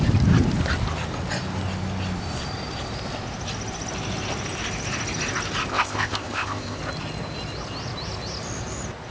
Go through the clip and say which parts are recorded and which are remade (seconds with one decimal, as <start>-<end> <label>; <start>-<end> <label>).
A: 0.0-5.7 recorded; 5.7-6.8 remade; 6.8-9.1 recorded